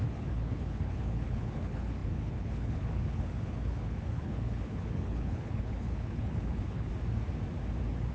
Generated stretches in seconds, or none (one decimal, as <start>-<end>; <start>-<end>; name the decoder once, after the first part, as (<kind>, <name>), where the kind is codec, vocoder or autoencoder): 0.0-6.9 (codec, HILCodec)